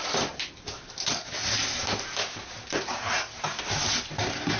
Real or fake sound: real